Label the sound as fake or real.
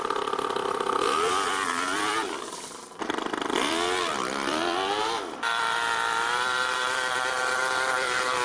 fake